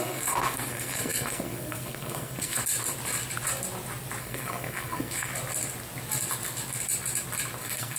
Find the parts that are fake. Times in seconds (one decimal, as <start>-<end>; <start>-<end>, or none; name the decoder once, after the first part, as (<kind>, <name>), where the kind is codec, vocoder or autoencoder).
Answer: 0.0-2.6 (codec, SNAC); 4.2-5.3; 7.6-8.0

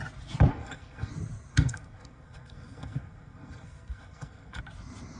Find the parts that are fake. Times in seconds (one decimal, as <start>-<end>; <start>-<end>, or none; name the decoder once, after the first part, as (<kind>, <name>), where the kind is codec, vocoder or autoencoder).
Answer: 0.5-1.1 (codec, SNAC); 1.5-4.6